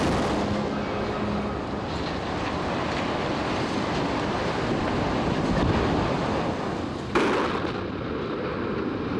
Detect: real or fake real